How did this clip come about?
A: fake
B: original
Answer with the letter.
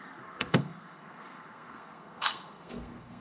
A